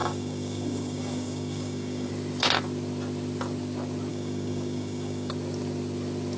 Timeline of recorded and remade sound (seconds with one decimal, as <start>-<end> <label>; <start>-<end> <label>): 0.0-2.1 remade; 2.1-4.1 recorded; 4.1-5.3 remade; 5.3-6.4 recorded